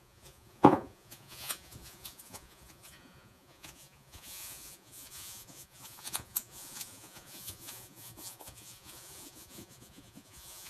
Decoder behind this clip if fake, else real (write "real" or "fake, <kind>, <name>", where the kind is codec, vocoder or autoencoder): fake, vocoder, Vocos